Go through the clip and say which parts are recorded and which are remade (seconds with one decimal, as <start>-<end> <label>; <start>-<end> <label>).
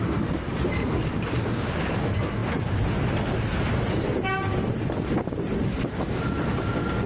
0.0-1.0 recorded; 1.0-1.7 remade; 1.7-7.1 recorded